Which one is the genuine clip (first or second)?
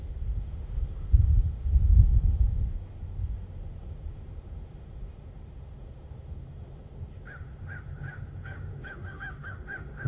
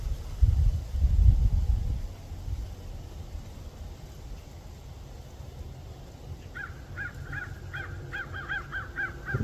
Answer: second